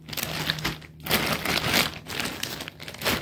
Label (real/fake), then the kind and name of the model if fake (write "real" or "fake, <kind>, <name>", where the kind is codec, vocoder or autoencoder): real